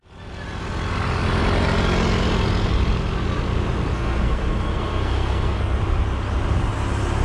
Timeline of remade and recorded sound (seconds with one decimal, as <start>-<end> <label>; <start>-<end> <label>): 0.0-3.9 recorded; 3.9-5.8 remade; 5.8-7.2 recorded